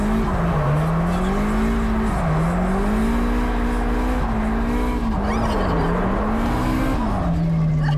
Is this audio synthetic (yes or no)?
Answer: no